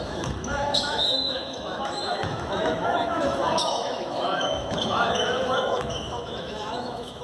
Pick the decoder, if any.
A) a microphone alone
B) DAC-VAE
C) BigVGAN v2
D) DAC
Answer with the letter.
B